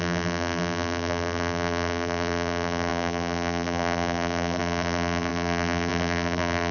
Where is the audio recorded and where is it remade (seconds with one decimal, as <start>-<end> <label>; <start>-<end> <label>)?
0.0-6.7 remade